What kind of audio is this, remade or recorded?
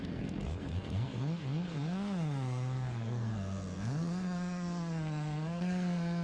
remade